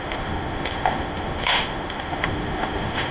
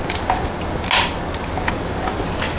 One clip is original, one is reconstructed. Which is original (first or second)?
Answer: second